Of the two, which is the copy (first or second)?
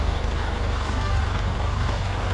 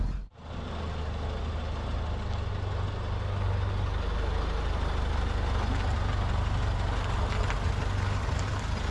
first